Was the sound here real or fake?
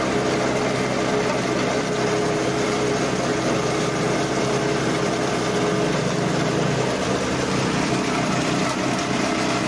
real